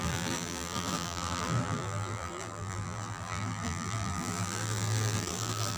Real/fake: fake